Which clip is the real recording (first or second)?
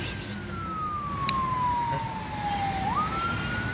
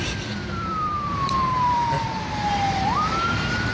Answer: first